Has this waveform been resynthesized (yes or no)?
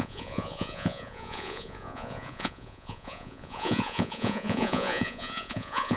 yes